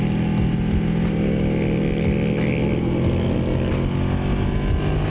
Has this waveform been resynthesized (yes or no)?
no